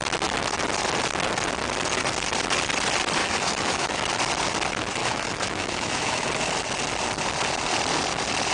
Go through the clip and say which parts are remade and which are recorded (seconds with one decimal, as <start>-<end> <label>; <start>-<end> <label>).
0.0-3.2 recorded; 3.2-4.2 remade; 4.2-5.0 recorded; 5.0-6.3 remade; 6.3-8.5 recorded